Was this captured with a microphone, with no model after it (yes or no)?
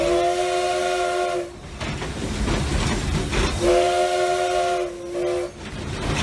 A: yes